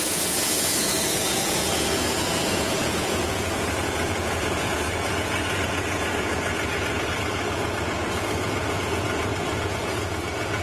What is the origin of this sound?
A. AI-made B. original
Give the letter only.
A